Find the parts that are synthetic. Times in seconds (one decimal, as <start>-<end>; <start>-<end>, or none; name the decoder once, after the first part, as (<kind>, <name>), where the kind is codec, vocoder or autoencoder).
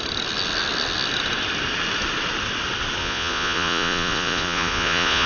3.0-5.3 (vocoder, Vocos)